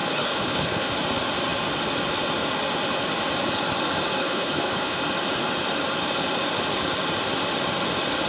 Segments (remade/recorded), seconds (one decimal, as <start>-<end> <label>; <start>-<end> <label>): 0.0-0.9 remade; 0.9-4.2 recorded; 4.2-5.0 remade; 5.0-8.3 recorded